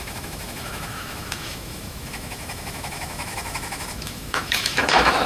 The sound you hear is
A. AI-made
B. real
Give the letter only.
A